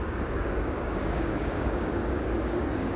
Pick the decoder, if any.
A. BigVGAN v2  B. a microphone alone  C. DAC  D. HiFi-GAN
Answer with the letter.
C